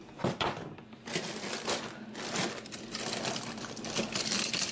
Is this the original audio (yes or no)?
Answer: yes